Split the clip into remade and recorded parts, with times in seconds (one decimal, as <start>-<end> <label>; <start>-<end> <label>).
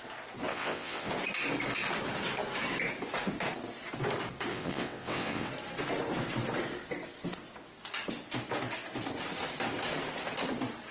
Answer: 0.0-0.5 recorded; 0.5-1.1 remade; 1.1-4.5 recorded; 4.5-5.5 remade; 5.5-10.9 recorded